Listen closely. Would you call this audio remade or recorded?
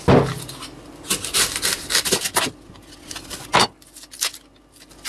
recorded